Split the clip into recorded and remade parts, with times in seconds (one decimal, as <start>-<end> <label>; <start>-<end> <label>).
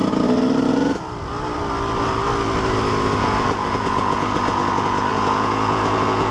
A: 0.0-3.2 recorded; 3.2-6.3 remade